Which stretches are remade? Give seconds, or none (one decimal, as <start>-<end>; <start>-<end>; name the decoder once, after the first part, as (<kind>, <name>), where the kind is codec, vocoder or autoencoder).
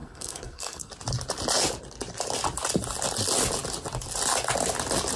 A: 0.0-0.9 (codec, SNAC)